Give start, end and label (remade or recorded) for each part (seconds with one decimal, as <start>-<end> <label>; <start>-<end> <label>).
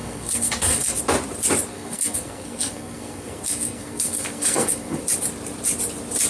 0.0-1.0 remade; 1.0-1.7 recorded; 1.7-5.0 remade; 5.0-6.3 recorded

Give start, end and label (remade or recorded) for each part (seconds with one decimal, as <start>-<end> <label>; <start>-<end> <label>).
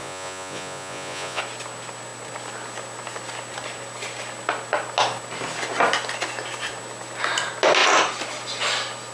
0.0-1.4 remade; 1.4-9.1 recorded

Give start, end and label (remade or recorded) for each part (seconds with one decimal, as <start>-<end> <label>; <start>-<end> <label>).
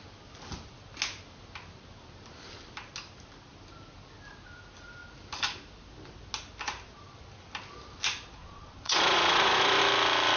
0.0-8.4 recorded; 8.4-9.8 remade; 9.8-10.4 recorded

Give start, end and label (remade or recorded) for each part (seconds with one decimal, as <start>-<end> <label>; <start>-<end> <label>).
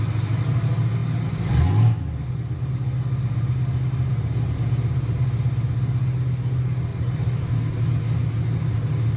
0.0-6.9 recorded; 6.9-7.4 remade; 7.4-9.2 recorded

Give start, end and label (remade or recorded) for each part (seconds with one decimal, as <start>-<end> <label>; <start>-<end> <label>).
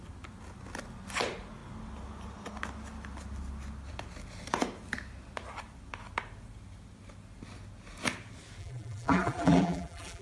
0.0-8.6 recorded; 8.6-10.2 remade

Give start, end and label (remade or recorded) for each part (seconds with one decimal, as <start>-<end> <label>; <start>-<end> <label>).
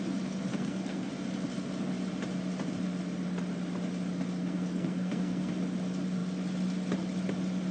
0.0-0.5 recorded; 0.5-1.1 remade; 1.1-4.4 recorded; 4.4-5.5 remade; 5.5-7.7 recorded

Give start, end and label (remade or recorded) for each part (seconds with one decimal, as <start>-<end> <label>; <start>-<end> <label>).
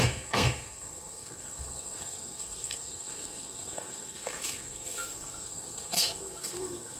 0.0-7.0 remade